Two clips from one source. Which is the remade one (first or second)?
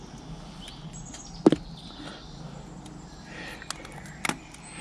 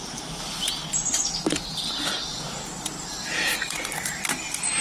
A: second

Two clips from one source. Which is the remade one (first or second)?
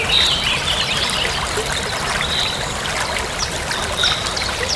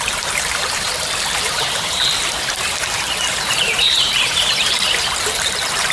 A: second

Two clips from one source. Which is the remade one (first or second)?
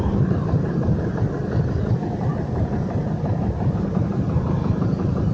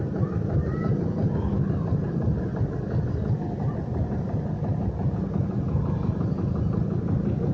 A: first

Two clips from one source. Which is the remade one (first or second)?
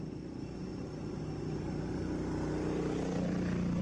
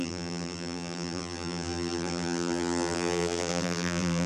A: second